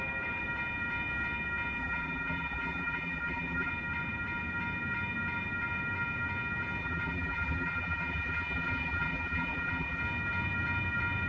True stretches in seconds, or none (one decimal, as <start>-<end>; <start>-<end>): 0.0-1.8; 3.7-6.8; 10.0-11.3